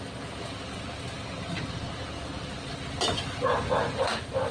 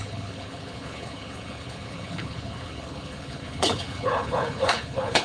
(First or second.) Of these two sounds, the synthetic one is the second